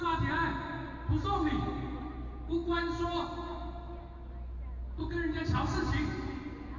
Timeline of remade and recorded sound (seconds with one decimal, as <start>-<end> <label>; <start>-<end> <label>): 0.0-6.8 recorded